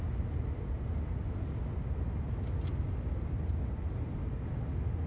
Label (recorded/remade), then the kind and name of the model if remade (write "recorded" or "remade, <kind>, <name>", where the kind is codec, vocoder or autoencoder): recorded